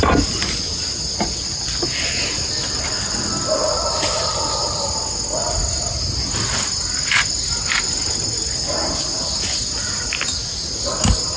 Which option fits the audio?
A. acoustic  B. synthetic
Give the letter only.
A